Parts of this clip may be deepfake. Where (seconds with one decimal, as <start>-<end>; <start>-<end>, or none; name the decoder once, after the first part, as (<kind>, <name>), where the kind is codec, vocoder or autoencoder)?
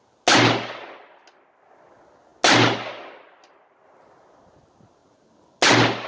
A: none